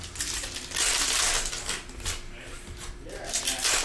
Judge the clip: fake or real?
real